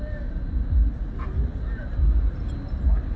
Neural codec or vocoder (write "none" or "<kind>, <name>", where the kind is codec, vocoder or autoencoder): none